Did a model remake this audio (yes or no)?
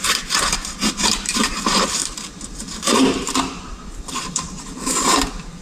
yes